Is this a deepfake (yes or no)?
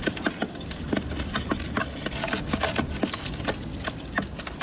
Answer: no